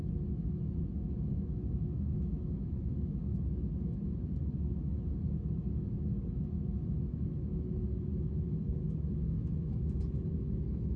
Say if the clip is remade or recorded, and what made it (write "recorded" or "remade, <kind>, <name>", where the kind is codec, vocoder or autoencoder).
remade, autoencoder, DAC-VAE